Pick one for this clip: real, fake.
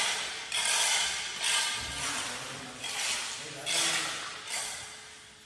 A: real